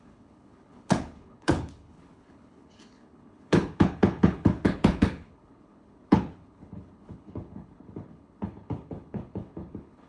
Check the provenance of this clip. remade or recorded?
remade